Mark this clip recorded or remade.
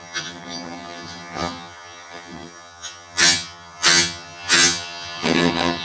remade